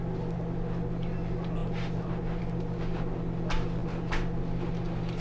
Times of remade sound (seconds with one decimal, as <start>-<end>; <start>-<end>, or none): none